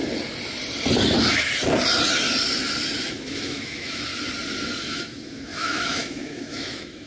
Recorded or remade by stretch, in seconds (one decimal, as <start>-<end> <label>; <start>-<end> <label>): 0.0-3.1 recorded; 3.1-4.1 remade; 4.1-4.9 recorded; 4.9-7.1 remade